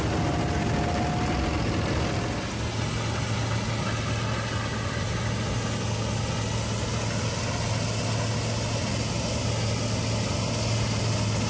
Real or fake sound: real